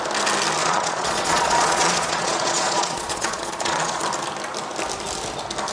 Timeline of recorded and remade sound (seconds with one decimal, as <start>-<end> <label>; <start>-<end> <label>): 0.0-0.6 recorded; 0.6-4.0 remade; 4.0-5.7 recorded